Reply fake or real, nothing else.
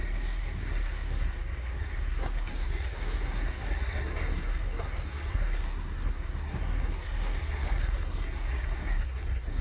fake